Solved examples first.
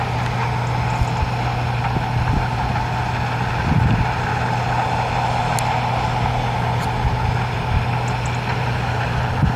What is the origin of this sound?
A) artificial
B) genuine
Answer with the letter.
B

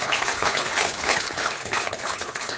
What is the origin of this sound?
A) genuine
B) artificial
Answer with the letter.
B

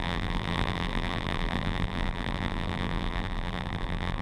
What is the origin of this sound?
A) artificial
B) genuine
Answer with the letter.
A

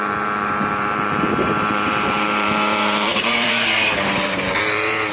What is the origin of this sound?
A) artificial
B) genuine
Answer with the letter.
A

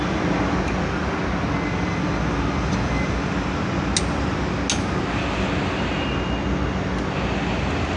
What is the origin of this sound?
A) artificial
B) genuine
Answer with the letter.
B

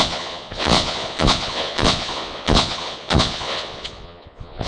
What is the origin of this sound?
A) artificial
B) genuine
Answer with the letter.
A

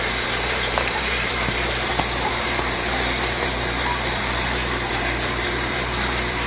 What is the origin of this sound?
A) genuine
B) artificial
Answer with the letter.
B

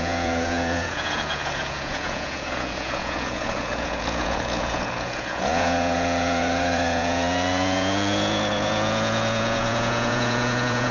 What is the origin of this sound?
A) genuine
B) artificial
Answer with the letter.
B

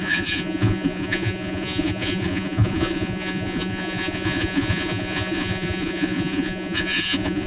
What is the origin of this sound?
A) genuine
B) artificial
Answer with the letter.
B